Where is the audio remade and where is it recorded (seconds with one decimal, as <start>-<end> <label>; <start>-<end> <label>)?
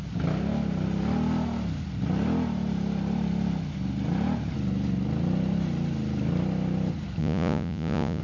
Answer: 0.0-7.2 recorded; 7.2-8.2 remade